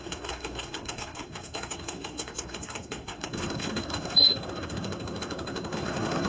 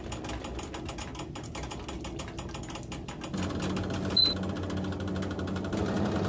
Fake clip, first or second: first